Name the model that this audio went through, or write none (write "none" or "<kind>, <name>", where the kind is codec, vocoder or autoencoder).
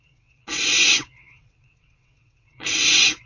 vocoder, WaveNeXt